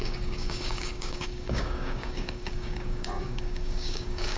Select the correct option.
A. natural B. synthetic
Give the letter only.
B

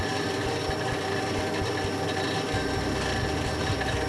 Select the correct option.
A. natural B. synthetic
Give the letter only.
A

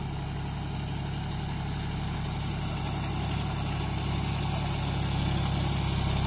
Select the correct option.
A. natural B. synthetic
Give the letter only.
A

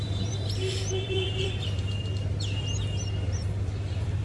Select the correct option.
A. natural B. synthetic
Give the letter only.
B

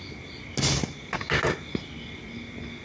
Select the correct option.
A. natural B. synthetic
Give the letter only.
A